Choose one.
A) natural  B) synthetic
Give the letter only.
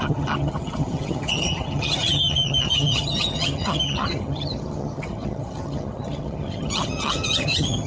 B